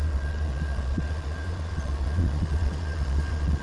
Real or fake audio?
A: fake